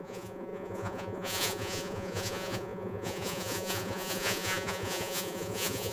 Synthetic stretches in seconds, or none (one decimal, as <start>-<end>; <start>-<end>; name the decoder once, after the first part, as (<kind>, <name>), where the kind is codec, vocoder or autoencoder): 0.0-5.9 (vocoder, Vocos)